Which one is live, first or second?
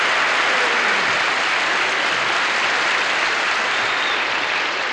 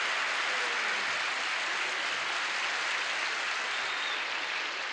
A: second